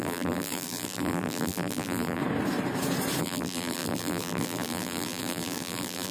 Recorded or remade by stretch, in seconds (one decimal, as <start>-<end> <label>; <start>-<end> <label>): 0.0-2.2 remade; 2.2-3.2 recorded; 3.2-6.1 remade